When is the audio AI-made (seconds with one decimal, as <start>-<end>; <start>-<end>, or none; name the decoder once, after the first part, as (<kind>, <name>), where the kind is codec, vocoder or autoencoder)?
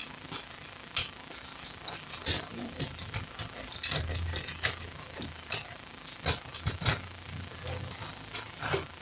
none